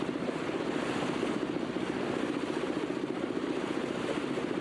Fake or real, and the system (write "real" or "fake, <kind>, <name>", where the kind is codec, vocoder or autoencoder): real